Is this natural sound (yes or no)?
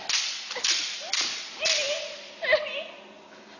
yes